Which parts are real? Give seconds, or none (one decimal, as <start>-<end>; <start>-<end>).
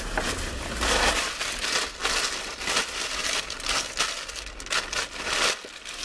0.0-6.0